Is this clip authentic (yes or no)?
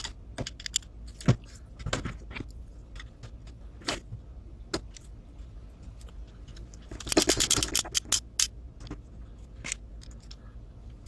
yes